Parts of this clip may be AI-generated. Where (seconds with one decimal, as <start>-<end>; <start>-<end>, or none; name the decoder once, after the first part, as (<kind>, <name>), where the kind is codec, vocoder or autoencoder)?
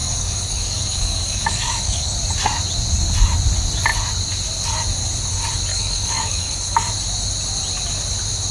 0.0-2.1 (codec, DAC); 5.7-6.9